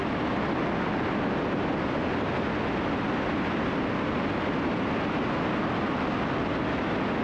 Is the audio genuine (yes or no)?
yes